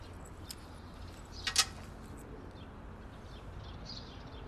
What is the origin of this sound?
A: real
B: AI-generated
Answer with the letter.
A